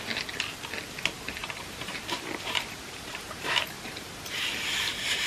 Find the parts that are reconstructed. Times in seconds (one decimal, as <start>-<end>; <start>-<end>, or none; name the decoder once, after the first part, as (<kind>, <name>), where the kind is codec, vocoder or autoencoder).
1.4-4.4 (vocoder, BigVGAN v2)